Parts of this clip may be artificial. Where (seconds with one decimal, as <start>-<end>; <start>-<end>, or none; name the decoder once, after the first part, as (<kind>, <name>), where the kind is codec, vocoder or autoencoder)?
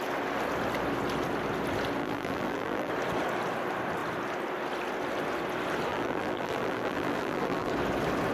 2.0-2.9 (vocoder, BigVGAN v2); 5.9-7.7